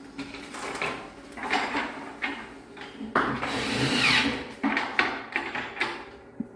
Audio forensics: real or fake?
fake